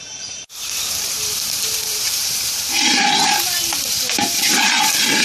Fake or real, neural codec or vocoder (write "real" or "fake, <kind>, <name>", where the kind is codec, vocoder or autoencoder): fake, vocoder, BigVGAN v2